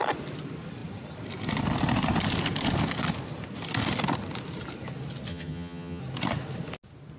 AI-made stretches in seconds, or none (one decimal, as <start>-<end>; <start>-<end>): 5.3-6.0